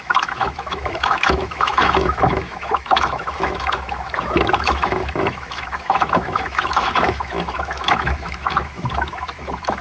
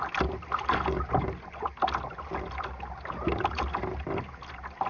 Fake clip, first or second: first